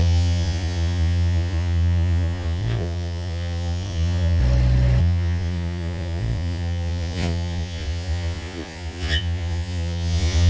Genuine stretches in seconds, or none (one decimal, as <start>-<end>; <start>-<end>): 4.4-5.0